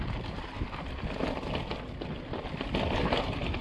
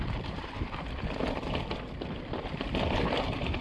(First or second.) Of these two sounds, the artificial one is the second